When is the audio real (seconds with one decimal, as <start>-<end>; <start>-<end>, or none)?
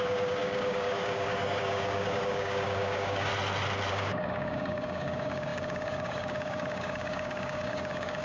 3.3-3.9